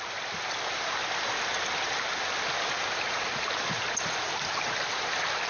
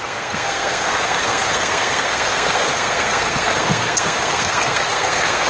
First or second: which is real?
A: first